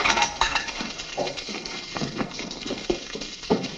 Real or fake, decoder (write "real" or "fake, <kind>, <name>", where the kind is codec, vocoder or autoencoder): fake, codec, SNAC